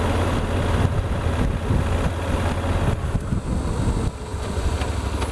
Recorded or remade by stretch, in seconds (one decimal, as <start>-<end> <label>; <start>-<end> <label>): 0.0-4.3 recorded; 4.3-4.8 remade; 4.8-5.3 recorded